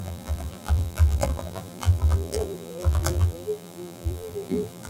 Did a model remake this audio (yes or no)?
yes